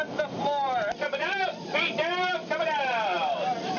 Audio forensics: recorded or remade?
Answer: remade